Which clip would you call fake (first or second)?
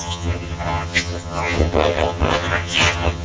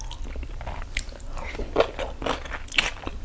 first